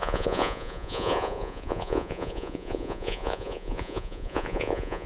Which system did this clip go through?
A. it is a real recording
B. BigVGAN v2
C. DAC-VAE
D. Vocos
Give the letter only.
D